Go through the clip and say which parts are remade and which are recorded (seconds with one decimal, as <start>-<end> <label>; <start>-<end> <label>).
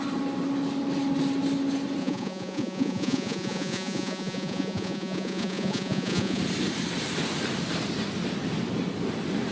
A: 0.0-2.0 recorded; 2.0-6.4 remade; 6.4-9.5 recorded